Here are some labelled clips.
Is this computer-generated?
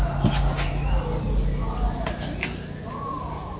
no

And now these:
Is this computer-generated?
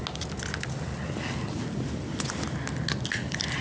no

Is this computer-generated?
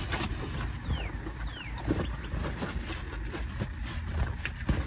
no